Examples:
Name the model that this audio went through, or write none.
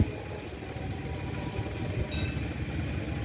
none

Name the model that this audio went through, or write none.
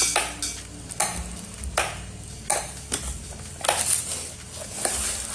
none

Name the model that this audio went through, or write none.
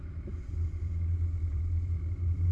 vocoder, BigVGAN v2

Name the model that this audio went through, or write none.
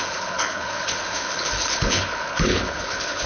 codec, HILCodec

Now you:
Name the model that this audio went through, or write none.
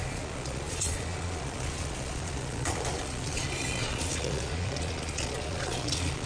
vocoder, Vocos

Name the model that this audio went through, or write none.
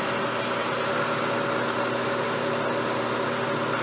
none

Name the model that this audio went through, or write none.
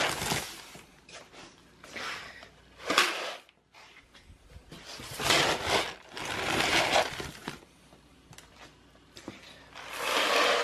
none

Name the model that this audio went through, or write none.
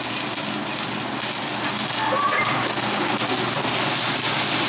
none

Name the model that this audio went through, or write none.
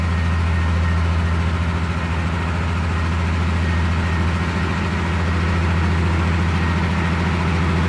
none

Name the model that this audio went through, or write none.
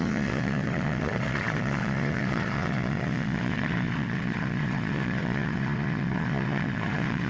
vocoder, Vocos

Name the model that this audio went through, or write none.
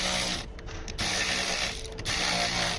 none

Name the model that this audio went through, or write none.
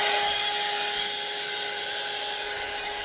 none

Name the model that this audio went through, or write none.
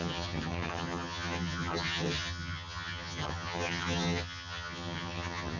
vocoder, HiFi-GAN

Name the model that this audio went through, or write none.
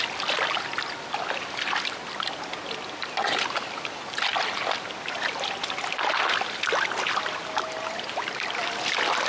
none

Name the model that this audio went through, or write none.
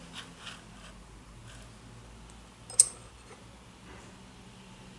none